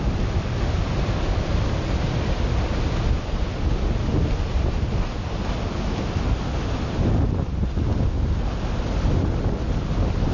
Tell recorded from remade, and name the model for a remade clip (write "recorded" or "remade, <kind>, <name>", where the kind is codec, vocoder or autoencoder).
recorded